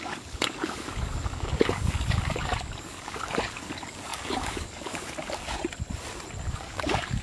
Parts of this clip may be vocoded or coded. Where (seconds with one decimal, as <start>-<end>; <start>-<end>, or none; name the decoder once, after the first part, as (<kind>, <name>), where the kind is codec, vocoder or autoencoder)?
0.0-5.6 (codec, DAC); 6.5-7.2